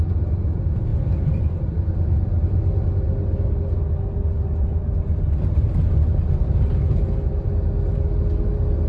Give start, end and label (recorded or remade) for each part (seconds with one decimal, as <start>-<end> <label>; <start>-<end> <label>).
0.0-8.9 recorded